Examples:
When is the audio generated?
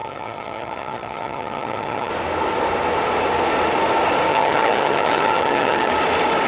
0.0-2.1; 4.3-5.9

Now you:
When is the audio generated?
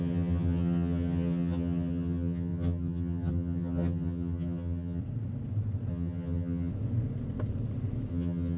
0.0-5.0; 5.9-6.7; 8.1-8.6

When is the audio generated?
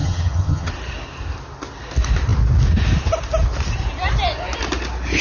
0.0-0.7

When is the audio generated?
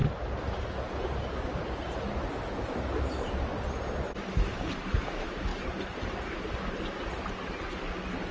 none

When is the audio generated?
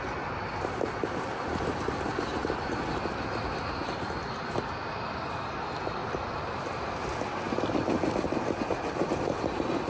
none